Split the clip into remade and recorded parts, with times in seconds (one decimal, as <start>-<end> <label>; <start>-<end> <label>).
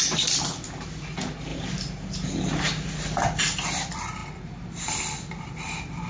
0.0-6.1 recorded